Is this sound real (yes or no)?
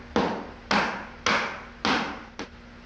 yes